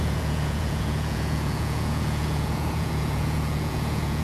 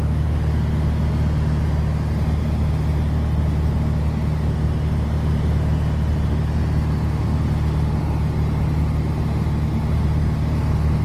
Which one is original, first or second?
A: second